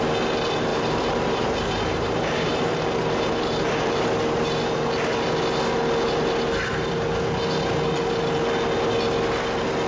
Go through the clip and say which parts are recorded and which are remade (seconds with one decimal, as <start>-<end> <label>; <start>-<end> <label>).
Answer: 0.0-0.7 recorded; 0.7-4.0 remade; 4.0-9.9 recorded